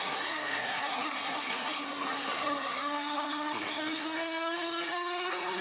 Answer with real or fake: fake